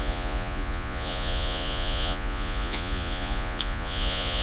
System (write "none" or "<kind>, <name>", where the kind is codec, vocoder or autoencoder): vocoder, Vocos